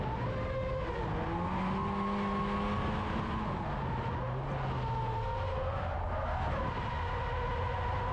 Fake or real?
real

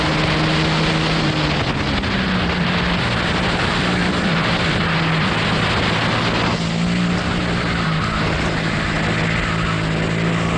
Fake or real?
real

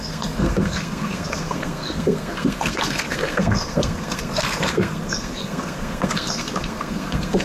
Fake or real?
fake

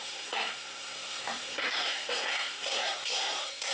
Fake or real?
fake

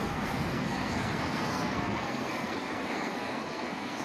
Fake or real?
fake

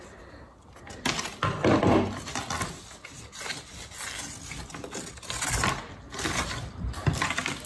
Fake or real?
real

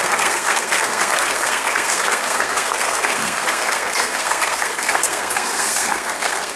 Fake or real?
fake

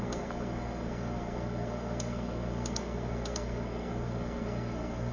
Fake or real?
fake